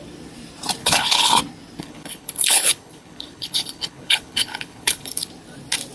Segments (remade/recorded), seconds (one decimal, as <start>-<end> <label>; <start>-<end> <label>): 0.0-0.8 recorded; 0.8-1.4 remade; 1.4-1.8 recorded; 1.8-5.3 remade; 5.3-5.9 recorded